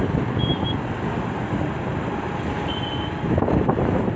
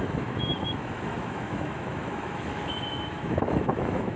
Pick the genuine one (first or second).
first